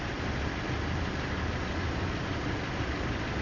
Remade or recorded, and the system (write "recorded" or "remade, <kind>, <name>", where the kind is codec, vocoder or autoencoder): recorded